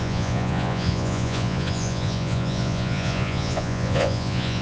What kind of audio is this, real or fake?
fake